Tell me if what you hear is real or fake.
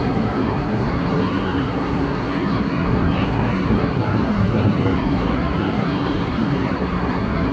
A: fake